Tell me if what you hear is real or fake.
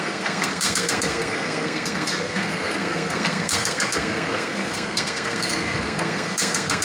fake